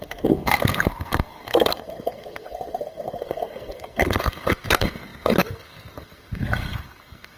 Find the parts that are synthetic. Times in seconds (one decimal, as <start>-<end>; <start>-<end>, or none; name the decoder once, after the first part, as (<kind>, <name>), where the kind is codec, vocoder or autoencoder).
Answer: 0.0-7.4 (codec, SNAC)